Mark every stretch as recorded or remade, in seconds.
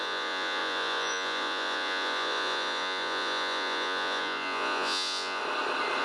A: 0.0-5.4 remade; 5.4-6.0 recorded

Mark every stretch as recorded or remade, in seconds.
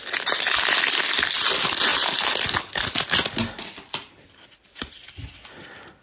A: 0.0-6.0 recorded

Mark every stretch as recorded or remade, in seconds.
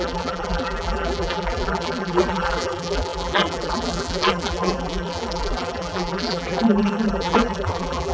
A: 0.0-8.1 remade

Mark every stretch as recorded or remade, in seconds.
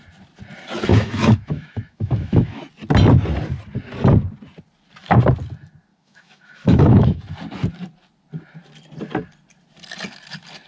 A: 0.0-0.9 recorded; 0.9-2.6 remade; 2.6-5.9 recorded; 5.9-7.2 remade; 7.2-10.7 recorded